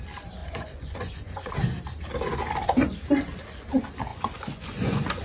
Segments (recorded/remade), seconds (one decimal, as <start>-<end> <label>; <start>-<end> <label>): 0.0-0.4 recorded; 0.4-1.5 remade; 1.5-4.1 recorded; 4.1-5.2 remade